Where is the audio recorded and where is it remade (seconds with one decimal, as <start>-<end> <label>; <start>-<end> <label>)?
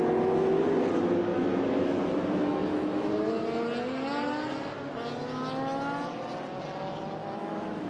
0.0-1.3 recorded; 1.3-3.2 remade; 3.2-7.2 recorded; 7.2-7.9 remade